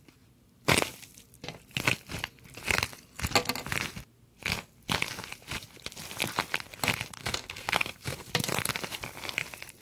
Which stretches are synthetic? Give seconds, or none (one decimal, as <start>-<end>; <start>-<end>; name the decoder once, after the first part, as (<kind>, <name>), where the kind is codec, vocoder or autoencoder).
7.2-8.3 (codec, SNAC)